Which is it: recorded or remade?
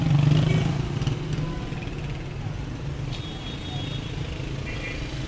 recorded